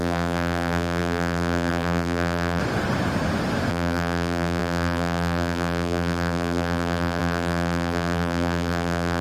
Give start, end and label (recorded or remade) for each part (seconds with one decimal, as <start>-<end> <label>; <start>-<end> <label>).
0.0-2.6 remade; 2.6-3.7 recorded; 3.7-9.2 remade